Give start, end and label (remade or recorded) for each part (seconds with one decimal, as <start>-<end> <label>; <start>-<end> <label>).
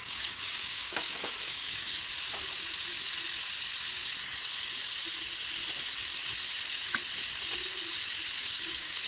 0.0-2.1 remade; 2.1-8.4 recorded; 8.4-9.1 remade